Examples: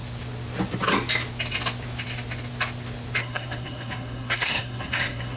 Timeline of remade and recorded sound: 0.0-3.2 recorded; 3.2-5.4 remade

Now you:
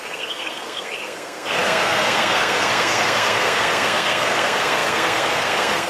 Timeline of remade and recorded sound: 0.0-5.9 remade

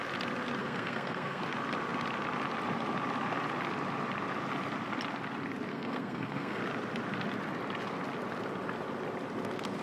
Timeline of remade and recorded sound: 0.0-0.6 recorded; 0.6-1.4 remade; 1.4-5.7 recorded; 5.7-6.6 remade; 6.6-9.8 recorded

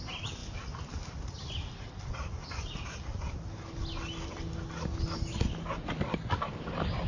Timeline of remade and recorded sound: 0.0-7.1 recorded